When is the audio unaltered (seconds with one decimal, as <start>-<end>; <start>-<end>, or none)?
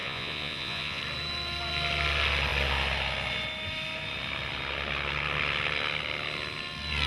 1.0-7.1